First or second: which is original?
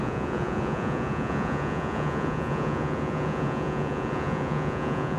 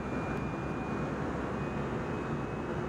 second